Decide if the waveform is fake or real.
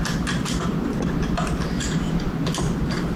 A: real